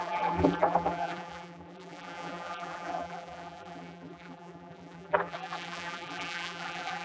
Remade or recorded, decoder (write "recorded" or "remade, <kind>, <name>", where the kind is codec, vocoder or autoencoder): remade, vocoder, BigVGAN v2